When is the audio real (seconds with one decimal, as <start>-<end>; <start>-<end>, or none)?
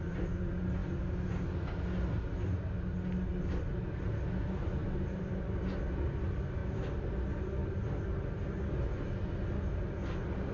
0.0-10.5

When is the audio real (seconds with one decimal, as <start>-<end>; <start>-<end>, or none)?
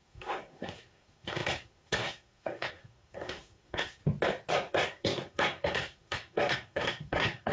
4.0-4.5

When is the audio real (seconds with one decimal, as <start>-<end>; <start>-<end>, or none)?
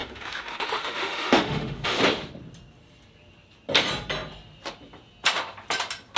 2.0-6.2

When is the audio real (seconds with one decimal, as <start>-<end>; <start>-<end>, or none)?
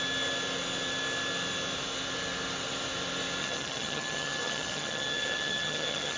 0.0-3.4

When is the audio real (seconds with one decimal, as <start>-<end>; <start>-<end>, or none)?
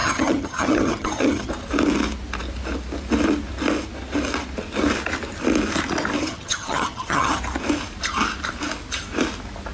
1.5-6.2; 7.4-9.7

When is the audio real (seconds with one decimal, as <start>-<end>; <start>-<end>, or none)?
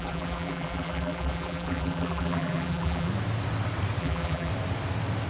3.1-4.0; 4.5-5.3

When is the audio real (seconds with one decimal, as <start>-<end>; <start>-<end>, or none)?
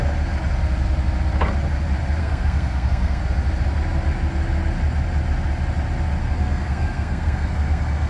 0.0-2.2; 3.2-6.2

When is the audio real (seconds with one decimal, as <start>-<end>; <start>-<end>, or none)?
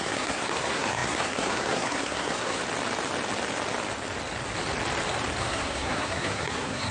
2.6-5.4